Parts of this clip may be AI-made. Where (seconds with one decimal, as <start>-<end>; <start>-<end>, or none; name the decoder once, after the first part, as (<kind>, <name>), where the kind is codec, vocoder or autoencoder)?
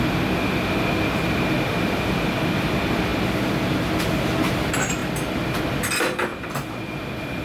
none